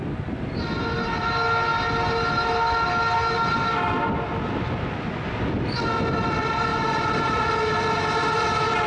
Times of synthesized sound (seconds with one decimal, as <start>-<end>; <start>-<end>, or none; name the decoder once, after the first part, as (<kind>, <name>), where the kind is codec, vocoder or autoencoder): 6.7-7.4 (vocoder, BigVGAN v2)